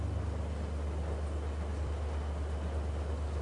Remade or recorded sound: recorded